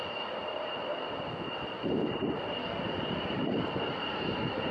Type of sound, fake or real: real